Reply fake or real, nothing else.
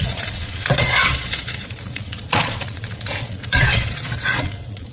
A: fake